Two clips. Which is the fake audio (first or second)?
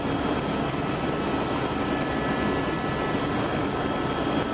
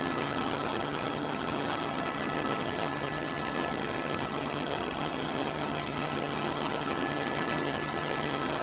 second